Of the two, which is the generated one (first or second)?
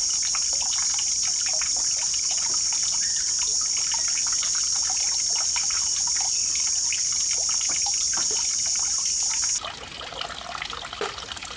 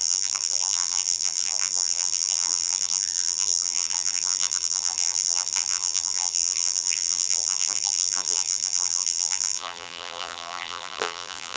second